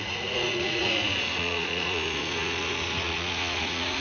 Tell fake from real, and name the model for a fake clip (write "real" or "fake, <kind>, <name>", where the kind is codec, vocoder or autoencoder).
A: fake, vocoder, Vocos